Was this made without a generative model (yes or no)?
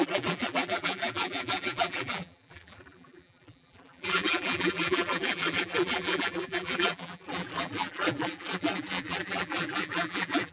no